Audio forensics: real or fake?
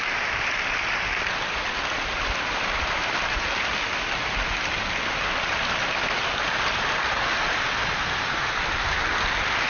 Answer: real